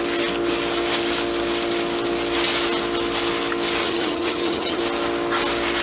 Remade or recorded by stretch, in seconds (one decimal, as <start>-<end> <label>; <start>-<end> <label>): 0.0-3.8 recorded; 3.8-4.8 remade; 4.8-5.8 recorded